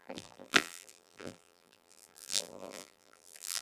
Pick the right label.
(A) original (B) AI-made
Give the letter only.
B